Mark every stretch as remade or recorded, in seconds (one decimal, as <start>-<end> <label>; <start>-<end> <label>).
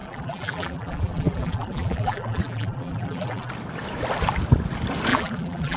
0.0-3.5 remade; 3.5-5.1 recorded; 5.1-5.8 remade